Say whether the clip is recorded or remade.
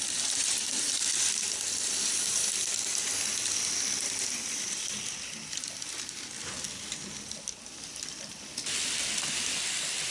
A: remade